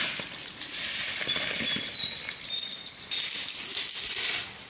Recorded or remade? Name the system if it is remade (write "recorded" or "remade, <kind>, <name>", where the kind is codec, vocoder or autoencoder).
recorded